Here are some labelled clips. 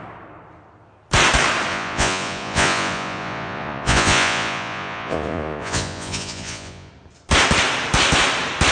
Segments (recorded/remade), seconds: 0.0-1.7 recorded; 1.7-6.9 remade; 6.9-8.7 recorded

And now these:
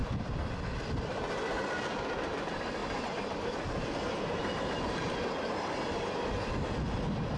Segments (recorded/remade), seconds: 0.0-7.4 recorded

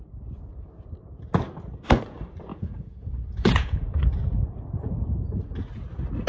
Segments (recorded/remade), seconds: 0.0-2.5 recorded; 2.5-4.1 remade; 4.1-6.3 recorded

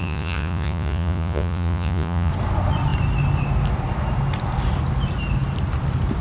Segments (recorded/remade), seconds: 0.0-2.3 remade; 2.3-6.2 recorded

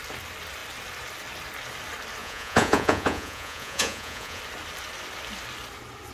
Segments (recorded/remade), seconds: 0.0-2.2 recorded; 2.2-4.4 remade; 4.4-6.1 recorded

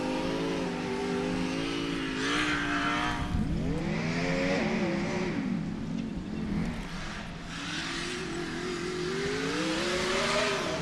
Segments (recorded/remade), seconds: 0.0-10.8 recorded

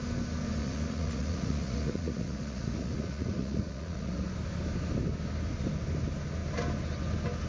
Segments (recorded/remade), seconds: 0.0-0.6 recorded; 0.6-4.3 remade; 4.3-7.5 recorded

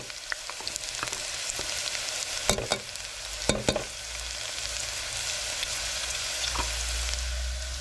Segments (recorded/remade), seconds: 0.0-5.6 recorded; 5.6-6.6 remade; 6.6-7.8 recorded